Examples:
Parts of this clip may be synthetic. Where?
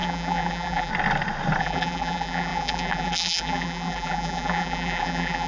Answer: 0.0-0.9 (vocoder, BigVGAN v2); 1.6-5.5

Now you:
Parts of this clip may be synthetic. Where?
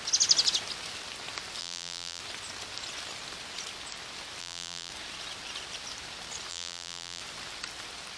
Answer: 1.6-2.2 (vocoder, BigVGAN v2); 4.4-4.9; 6.5-7.2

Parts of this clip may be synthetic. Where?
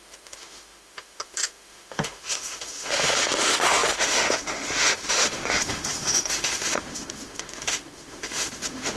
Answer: 0.0-9.0 (autoencoder, DAC-VAE)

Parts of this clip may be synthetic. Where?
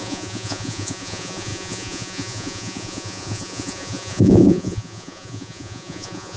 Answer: 0.0-6.4 (vocoder, Vocos)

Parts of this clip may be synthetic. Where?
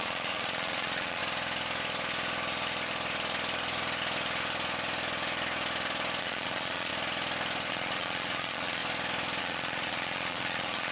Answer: 0.0-1.2 (vocoder, Vocos); 6.2-6.9; 7.7-8.8; 9.4-10.9